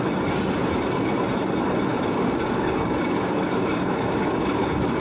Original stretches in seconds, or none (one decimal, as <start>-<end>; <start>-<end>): 0.0-1.9